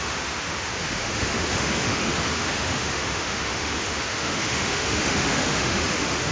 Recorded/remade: remade